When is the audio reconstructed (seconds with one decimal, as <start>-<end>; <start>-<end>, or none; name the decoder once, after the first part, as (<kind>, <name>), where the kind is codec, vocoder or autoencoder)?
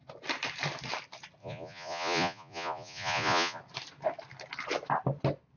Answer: 1.4-3.6 (vocoder, Vocos)